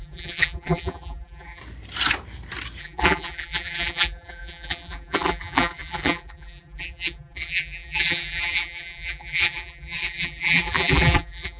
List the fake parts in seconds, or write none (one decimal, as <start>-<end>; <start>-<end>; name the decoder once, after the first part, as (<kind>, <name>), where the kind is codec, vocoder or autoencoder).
0.0-1.6 (vocoder, BigVGAN v2); 2.8-11.6